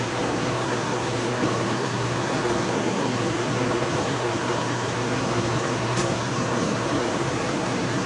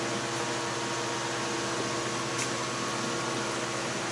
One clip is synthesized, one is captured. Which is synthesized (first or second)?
first